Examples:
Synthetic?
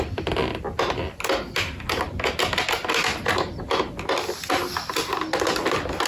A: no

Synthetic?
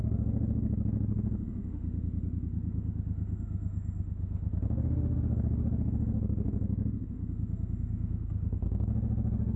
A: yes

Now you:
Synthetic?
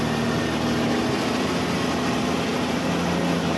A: no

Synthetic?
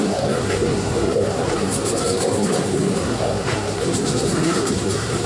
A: yes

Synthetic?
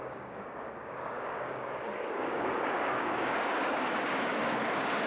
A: yes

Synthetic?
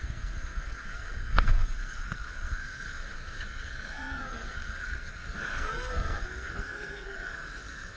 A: yes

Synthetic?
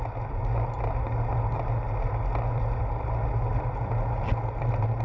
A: no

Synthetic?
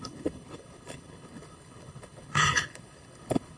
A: yes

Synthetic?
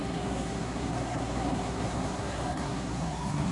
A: yes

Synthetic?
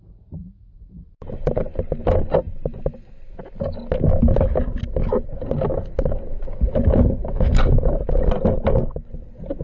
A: no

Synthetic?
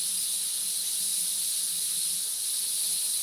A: no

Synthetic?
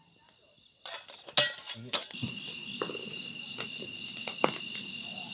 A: no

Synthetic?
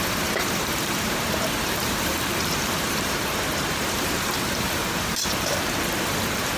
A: yes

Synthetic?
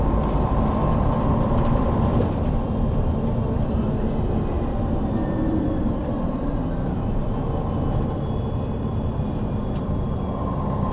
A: yes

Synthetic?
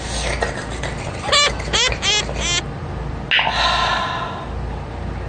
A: no